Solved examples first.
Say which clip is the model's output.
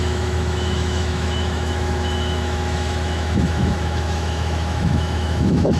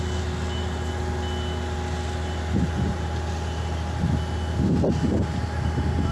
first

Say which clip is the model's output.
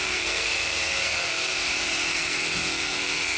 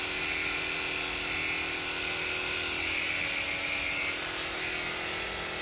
first